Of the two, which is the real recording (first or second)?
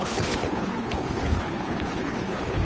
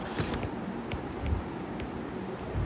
second